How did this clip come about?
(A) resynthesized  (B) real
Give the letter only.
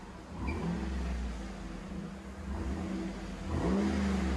B